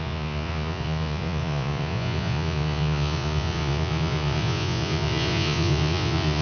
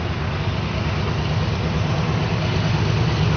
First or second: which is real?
second